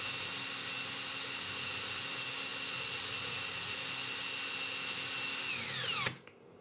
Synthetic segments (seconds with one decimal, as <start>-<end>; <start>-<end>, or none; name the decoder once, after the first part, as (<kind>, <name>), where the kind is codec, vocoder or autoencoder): none